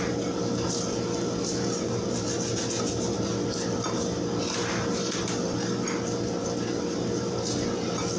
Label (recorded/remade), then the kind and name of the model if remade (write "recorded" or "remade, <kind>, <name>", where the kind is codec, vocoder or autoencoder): recorded